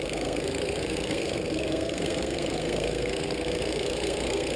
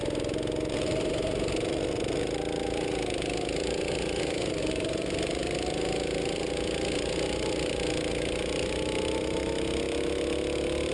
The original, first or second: second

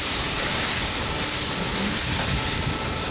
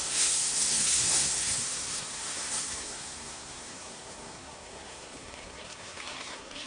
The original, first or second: first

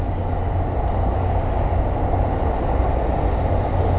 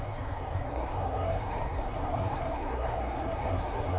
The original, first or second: first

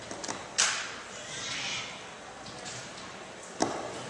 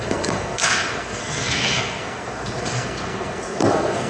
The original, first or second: first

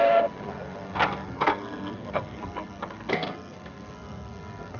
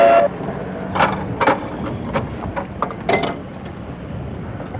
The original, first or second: second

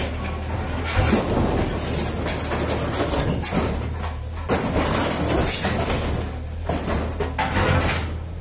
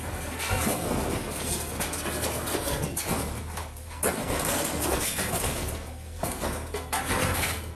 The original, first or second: first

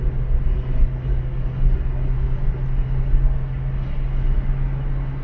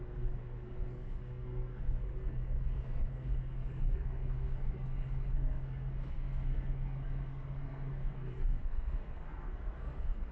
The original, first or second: first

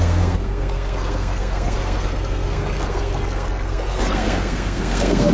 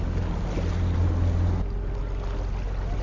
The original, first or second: second